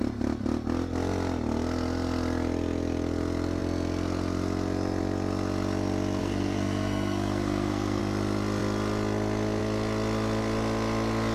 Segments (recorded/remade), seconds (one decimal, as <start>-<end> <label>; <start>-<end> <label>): 0.0-6.2 recorded; 6.2-8.0 remade; 8.0-11.3 recorded